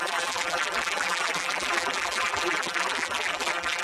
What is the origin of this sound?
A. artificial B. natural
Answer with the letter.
A